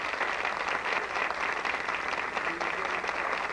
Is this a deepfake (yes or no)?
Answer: no